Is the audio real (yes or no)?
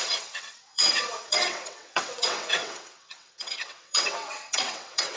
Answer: no